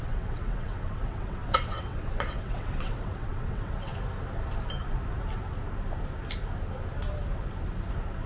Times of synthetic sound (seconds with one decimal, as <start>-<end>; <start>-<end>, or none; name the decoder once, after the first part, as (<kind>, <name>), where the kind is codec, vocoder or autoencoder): 0.0-3.9 (vocoder, WaveNeXt)